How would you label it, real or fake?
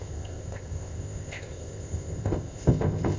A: fake